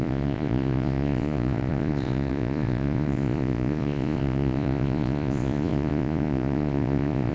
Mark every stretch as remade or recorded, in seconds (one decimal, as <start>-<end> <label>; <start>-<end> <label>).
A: 0.0-7.3 remade